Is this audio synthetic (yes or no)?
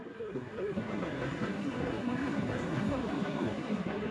yes